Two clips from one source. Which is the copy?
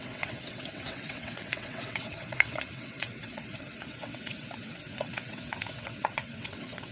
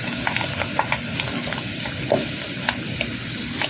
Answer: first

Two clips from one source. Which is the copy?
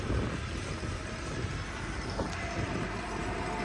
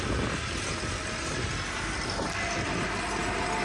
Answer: first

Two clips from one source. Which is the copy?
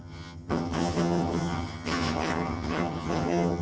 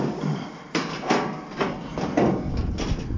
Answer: first